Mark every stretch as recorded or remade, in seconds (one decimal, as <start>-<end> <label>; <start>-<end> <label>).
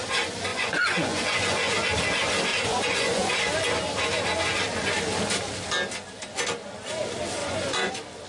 0.0-0.5 recorded; 0.5-1.7 remade; 1.7-2.5 recorded; 2.5-3.3 remade; 3.3-7.4 recorded; 7.4-7.9 remade; 7.9-8.3 recorded